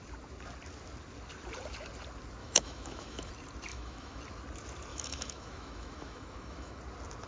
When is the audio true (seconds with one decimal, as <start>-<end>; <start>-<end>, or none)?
0.0-2.4; 3.3-3.7; 4.2-4.9; 6.8-7.3